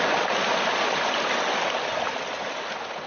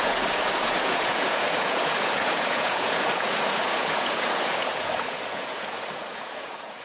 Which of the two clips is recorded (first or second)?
first